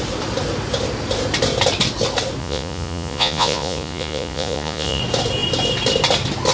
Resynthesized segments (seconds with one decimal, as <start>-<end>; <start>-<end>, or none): 2.4-5.0